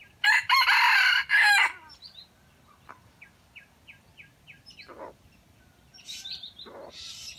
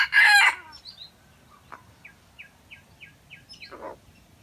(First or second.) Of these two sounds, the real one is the second